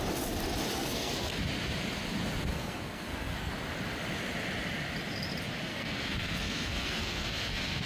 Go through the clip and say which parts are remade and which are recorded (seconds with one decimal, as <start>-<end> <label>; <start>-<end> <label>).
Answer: 0.0-0.7 recorded; 0.7-1.4 remade; 1.4-2.5 recorded; 2.5-3.5 remade; 3.5-5.7 recorded; 5.7-7.9 remade